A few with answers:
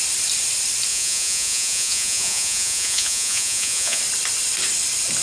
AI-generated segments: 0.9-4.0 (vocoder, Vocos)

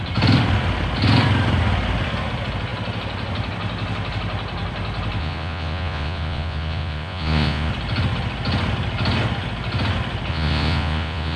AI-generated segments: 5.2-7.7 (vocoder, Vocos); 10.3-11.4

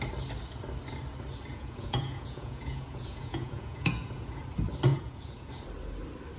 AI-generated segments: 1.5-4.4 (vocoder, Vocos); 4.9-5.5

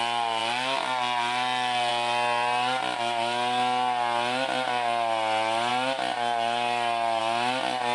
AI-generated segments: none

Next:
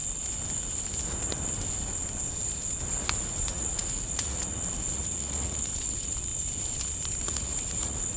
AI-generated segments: 3.0-6.3 (vocoder, Vocos); 7.2-8.2